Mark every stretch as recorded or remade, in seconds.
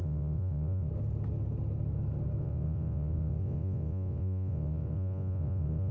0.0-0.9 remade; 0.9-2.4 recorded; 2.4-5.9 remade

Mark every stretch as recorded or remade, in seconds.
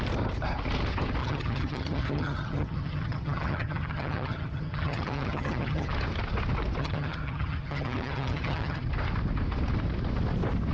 0.0-1.2 recorded; 1.2-5.9 remade; 5.9-6.8 recorded; 6.8-8.9 remade; 8.9-10.7 recorded